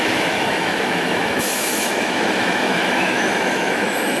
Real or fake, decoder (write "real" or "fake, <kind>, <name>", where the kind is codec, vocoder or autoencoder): fake, autoencoder, DAC-VAE